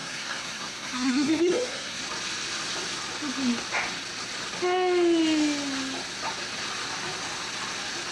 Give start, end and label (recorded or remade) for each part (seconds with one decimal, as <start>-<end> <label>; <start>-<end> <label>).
0.0-2.0 remade; 2.0-8.1 recorded